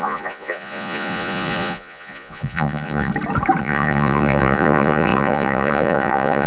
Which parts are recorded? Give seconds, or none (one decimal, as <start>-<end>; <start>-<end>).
3.1-3.6